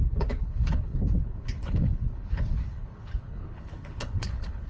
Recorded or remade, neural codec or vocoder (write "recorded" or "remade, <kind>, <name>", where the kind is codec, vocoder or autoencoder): remade, codec, HILCodec